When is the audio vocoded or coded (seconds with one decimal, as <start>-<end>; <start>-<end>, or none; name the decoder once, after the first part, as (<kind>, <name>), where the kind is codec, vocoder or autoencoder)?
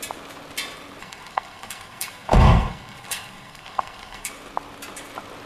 1.0-4.3 (codec, SNAC)